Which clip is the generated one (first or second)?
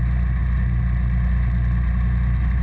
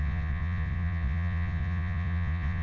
second